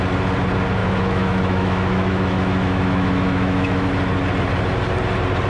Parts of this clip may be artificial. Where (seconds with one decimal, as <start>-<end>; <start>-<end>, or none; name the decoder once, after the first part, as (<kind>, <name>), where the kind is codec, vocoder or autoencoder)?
0.8-3.9 (autoencoder, DAC-VAE)